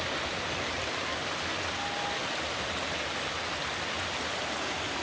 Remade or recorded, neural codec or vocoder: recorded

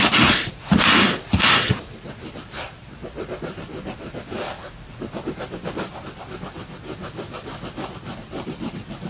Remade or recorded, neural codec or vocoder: remade, vocoder, BigVGAN v2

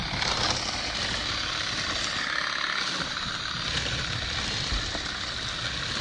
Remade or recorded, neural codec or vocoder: recorded